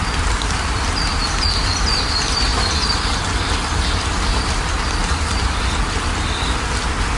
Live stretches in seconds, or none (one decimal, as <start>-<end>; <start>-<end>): 2.5-4.3